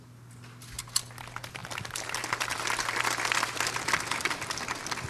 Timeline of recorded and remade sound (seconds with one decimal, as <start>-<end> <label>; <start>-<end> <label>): 0.0-5.1 recorded